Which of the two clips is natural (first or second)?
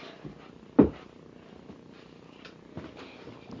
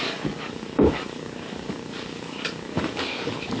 first